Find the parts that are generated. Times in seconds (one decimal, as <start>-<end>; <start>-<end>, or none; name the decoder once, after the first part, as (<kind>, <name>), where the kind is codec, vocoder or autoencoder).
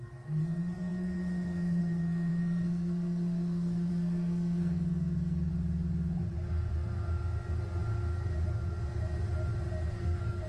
0.0-5.5 (codec, SNAC); 9.9-10.5